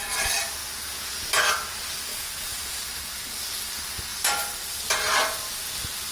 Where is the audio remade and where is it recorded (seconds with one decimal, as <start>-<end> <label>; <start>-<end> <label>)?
0.0-0.6 recorded; 0.6-1.2 remade; 1.2-2.1 recorded; 2.1-2.7 remade; 2.7-6.1 recorded